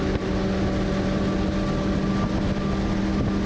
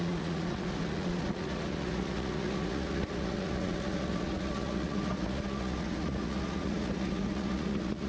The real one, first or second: first